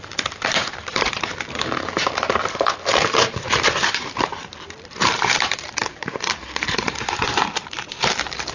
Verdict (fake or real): fake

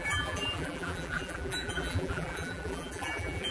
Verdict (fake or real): fake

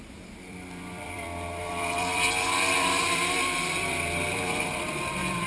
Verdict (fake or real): fake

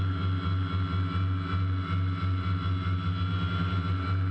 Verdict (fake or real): real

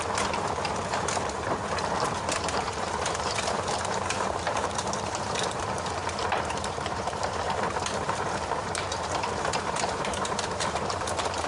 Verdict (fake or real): fake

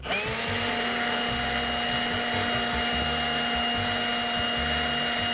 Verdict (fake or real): real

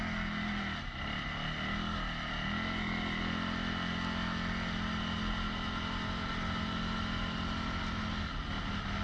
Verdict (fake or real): real